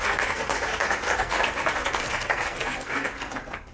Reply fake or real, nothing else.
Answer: fake